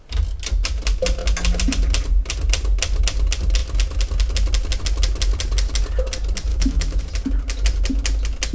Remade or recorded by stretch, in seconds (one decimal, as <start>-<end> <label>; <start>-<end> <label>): 0.0-6.5 recorded; 6.5-7.0 remade; 7.0-8.5 recorded